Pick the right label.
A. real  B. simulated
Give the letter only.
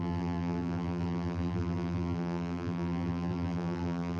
B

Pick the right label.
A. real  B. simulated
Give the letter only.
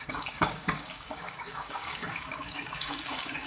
B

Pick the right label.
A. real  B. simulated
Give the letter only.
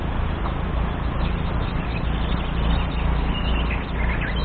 A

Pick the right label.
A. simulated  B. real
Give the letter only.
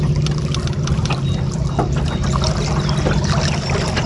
B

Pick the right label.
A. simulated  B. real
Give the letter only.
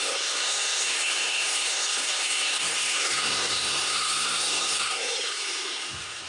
A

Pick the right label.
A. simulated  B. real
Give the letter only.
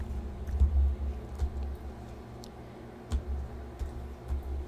B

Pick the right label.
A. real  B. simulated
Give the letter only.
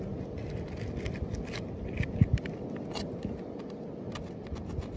A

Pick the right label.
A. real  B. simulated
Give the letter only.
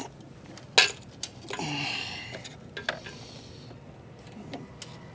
A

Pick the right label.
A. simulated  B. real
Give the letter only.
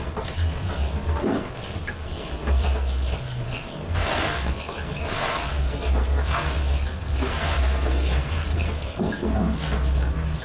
A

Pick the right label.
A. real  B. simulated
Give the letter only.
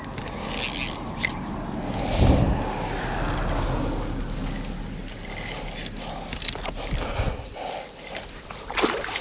A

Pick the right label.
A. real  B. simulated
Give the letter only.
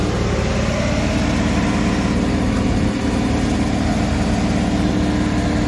A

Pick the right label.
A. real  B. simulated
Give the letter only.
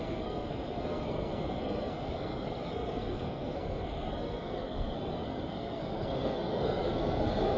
B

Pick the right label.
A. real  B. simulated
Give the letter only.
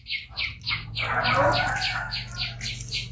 A